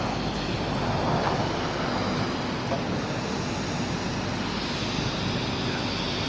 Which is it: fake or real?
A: real